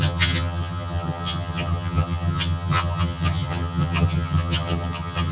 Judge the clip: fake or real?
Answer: fake